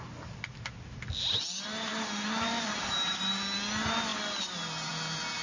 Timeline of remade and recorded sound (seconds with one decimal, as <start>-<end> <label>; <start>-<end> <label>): 0.0-1.9 recorded; 1.9-3.2 remade; 3.2-5.4 recorded